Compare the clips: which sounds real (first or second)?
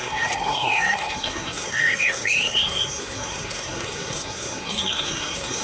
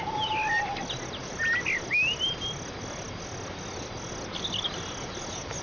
second